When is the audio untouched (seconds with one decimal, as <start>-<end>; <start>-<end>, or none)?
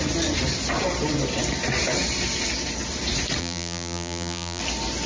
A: 0.0-3.4; 4.6-5.1